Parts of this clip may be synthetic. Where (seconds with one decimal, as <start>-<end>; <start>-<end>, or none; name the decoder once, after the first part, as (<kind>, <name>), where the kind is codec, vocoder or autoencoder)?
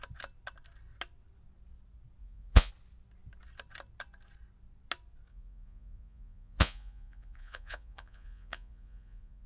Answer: 2.2-2.7 (vocoder, Vocos); 5.3-9.5